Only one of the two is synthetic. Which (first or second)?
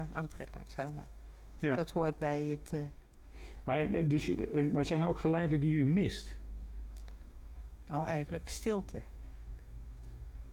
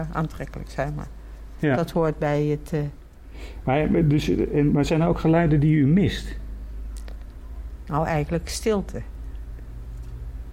first